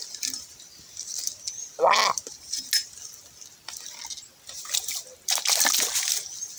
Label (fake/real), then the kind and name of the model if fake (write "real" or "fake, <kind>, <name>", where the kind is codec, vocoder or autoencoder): real